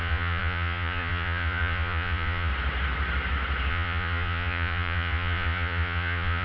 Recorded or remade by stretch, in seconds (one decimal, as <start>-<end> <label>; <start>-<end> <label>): 0.0-2.5 remade; 2.5-3.7 recorded; 3.7-6.4 remade